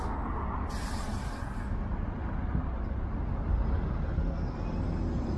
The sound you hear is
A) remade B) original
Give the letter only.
B